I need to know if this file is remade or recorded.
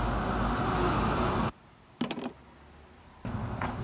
recorded